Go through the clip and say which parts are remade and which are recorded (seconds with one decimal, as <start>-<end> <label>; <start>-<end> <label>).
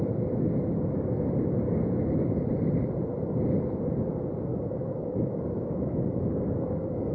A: 0.0-4.5 recorded; 4.5-7.1 remade